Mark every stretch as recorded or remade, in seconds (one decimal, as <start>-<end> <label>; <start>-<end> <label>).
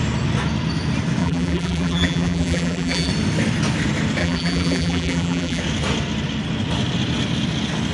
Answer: 0.0-1.2 recorded; 1.2-3.1 remade; 3.1-4.2 recorded; 4.2-5.6 remade; 5.6-7.9 recorded